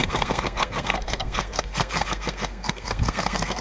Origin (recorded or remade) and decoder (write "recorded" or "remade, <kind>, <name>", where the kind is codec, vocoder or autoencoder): remade, codec, SNAC